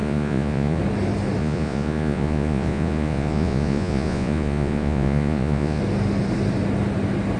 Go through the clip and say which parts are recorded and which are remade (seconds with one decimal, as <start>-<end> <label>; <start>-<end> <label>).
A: 0.0-0.8 remade; 0.8-1.4 recorded; 1.4-5.8 remade; 5.8-7.4 recorded